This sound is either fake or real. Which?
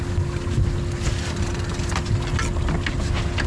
real